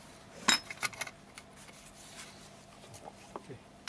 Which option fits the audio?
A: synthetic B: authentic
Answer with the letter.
B